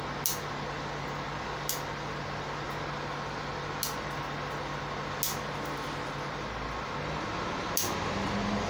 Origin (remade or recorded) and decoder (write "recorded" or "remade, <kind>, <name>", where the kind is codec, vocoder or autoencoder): recorded